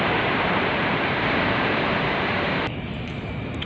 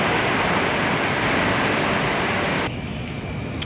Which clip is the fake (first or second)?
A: first